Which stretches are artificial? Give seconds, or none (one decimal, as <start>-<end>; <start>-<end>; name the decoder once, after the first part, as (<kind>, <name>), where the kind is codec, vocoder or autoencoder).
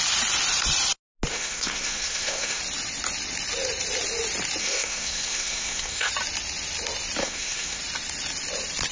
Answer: 1.3-2.6 (codec, SNAC); 4.6-6.1; 7.2-7.8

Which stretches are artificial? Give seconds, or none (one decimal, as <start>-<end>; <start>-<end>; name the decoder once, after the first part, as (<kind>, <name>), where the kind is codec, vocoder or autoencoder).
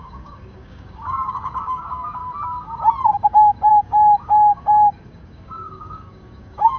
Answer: 0.0-2.2 (codec, DAC); 3.7-6.8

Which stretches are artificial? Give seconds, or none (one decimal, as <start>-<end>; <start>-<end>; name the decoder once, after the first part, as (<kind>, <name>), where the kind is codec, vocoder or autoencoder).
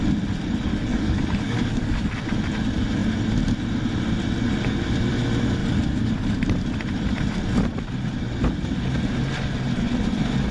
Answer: 0.7-2.1 (codec, DAC)